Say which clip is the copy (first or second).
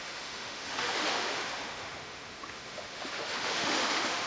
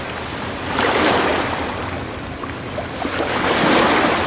first